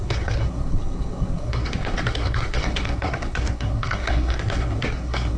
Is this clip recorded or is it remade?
remade